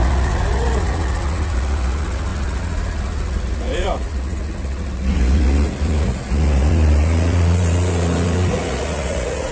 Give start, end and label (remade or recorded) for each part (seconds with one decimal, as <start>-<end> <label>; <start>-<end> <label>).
0.0-9.5 remade